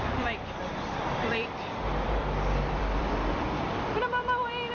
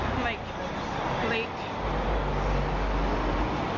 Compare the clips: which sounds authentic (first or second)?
second